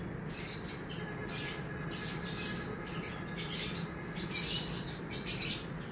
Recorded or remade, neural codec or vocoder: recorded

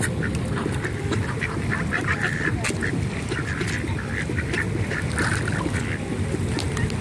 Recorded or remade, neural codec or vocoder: recorded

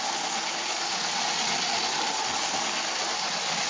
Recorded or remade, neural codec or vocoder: recorded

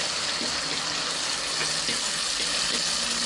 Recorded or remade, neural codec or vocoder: recorded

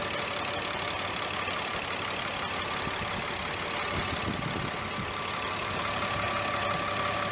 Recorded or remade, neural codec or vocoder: recorded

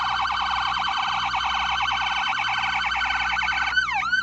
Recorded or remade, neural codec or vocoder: recorded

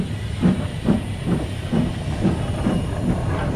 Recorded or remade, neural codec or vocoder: recorded